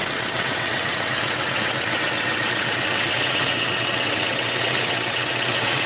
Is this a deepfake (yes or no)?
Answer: yes